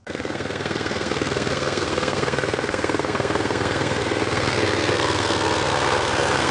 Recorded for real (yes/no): no